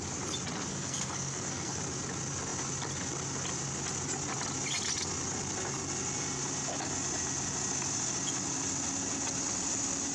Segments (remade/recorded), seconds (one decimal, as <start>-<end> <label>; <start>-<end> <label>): 0.0-0.7 recorded; 0.7-1.8 remade; 1.8-10.1 recorded